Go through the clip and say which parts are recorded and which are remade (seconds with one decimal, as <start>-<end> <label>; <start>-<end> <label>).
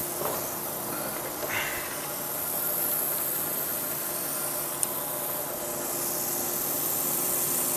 0.0-3.7 recorded; 3.7-5.6 remade; 5.6-7.8 recorded